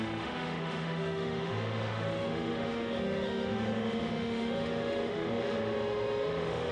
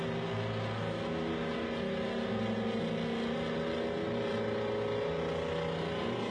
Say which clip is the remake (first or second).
first